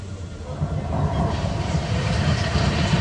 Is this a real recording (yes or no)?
no